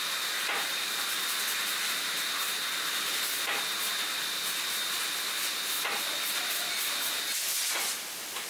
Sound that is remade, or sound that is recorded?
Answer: recorded